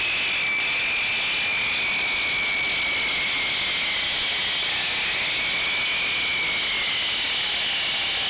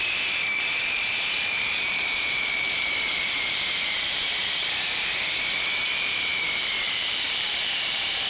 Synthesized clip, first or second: second